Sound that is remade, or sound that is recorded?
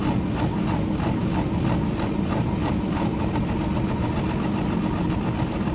recorded